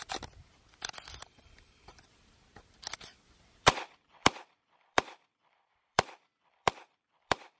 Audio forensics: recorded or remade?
remade